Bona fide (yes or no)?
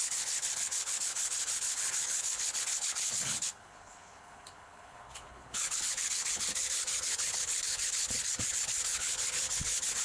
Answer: no